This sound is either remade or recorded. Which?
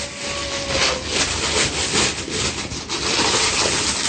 recorded